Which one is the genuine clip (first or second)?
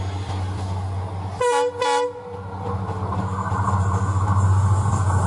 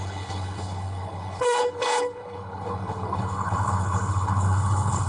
first